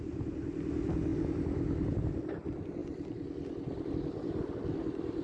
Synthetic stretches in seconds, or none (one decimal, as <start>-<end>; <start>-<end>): none